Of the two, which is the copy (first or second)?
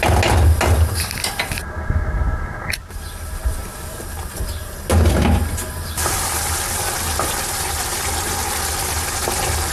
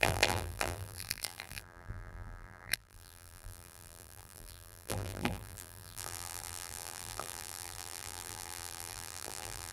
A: second